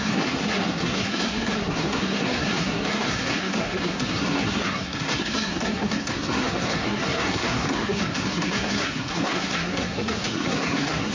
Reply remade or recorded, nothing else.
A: remade